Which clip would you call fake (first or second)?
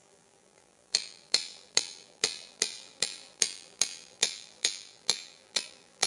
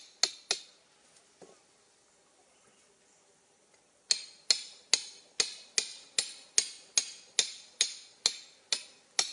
first